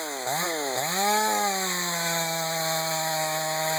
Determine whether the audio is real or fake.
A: fake